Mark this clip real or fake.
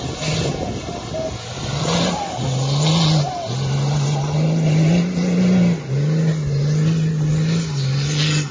real